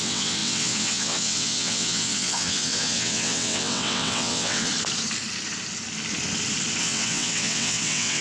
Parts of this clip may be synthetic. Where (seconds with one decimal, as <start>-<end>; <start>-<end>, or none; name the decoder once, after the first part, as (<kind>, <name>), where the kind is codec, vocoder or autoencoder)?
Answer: 0.0-4.7 (vocoder, WaveNeXt); 6.8-8.2